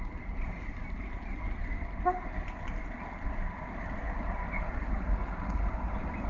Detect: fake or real real